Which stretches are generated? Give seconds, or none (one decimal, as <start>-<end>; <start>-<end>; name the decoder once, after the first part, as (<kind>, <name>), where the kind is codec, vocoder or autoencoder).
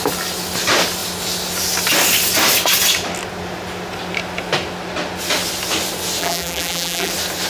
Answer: 6.2-7.1 (vocoder, BigVGAN v2)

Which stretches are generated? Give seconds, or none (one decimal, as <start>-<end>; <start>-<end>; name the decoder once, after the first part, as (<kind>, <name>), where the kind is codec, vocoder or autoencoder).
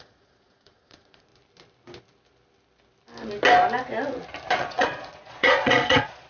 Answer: 0.0-1.3 (vocoder, Vocos); 4.6-6.3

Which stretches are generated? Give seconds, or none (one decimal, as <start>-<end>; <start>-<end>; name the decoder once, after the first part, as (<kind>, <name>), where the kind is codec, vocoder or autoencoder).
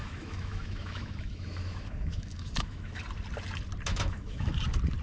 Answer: 0.0-3.0 (autoencoder, DAC-VAE); 3.9-4.5